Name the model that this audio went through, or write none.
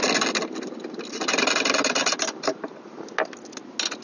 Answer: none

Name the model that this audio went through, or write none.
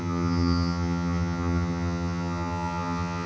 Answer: vocoder, HiFi-GAN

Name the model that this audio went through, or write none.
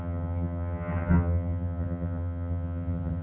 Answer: vocoder, HiFi-GAN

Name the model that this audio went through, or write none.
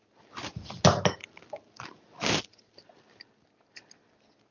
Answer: none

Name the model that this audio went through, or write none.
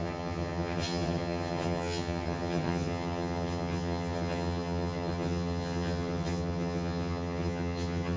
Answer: vocoder, HiFi-GAN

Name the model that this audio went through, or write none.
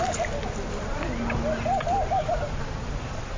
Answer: none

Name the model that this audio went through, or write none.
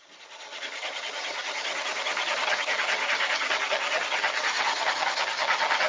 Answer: vocoder, HiFi-GAN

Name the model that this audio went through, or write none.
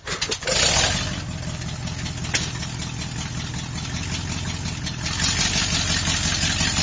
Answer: none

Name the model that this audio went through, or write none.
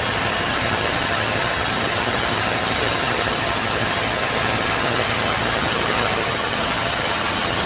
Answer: vocoder, HiFi-GAN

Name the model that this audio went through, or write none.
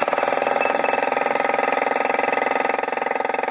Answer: none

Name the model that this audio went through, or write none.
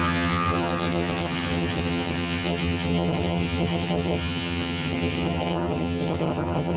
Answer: vocoder, HiFi-GAN